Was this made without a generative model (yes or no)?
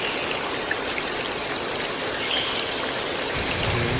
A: yes